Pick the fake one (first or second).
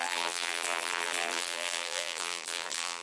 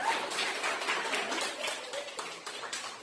first